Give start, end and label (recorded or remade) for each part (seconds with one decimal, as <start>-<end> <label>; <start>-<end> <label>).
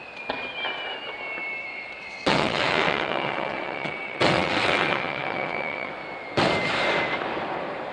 0.0-1.7 recorded; 1.7-5.9 remade; 5.9-7.9 recorded